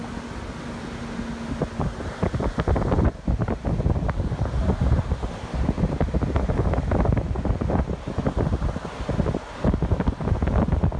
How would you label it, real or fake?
real